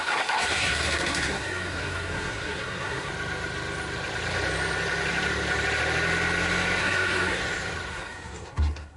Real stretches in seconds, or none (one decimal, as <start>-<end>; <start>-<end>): 3.1-6.8; 7.4-7.9